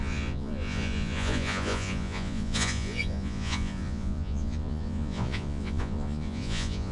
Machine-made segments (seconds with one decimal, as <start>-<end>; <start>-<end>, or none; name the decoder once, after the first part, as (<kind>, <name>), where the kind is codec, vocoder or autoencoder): 0.0-6.9 (vocoder, Vocos)